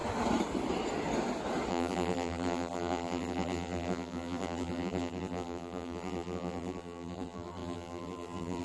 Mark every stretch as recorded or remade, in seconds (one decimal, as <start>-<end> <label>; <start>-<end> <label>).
0.0-1.7 recorded; 1.7-8.6 remade